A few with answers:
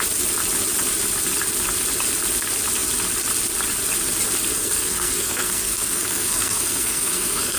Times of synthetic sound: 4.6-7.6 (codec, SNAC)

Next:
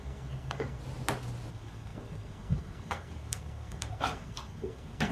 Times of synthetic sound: 0.0-0.8 (codec, SNAC); 1.5-5.1

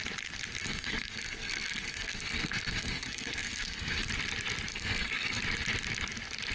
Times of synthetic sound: 0.6-4.1 (codec, SNAC); 4.7-5.4

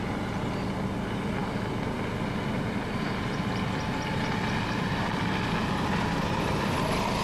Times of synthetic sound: none

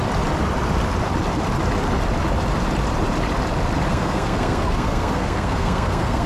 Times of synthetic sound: 3.9-6.3 (codec, SNAC)